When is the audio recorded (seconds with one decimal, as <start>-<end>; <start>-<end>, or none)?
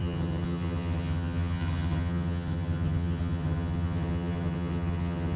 none